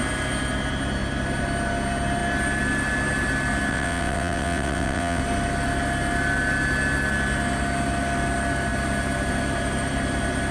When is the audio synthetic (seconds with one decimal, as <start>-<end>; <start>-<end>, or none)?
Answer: 3.7-5.2